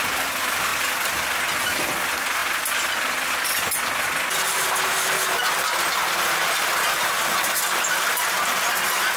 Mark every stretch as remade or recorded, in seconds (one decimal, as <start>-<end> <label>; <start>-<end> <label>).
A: 0.0-9.2 recorded